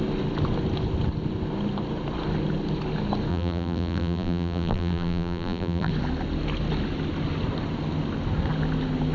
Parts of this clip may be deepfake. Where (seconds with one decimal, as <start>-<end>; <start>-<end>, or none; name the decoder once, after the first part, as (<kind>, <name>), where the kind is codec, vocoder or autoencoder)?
3.3-5.9 (vocoder, BigVGAN v2)